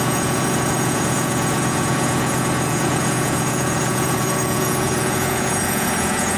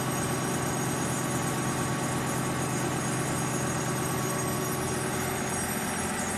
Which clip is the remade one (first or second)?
first